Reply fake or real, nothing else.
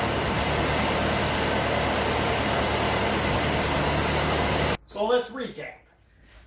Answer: real